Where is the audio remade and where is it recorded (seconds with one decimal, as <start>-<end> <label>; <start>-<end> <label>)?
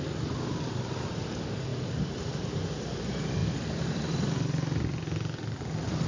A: 0.0-1.7 recorded; 1.7-3.0 remade; 3.0-3.4 recorded; 3.4-4.1 remade; 4.1-6.1 recorded